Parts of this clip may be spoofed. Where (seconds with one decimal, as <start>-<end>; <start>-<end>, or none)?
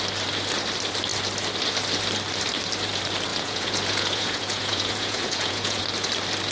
3.3-5.8